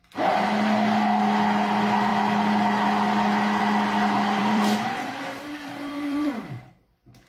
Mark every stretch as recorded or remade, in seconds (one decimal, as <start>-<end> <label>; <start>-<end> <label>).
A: 0.0-4.4 recorded; 4.4-6.7 remade; 6.7-7.3 recorded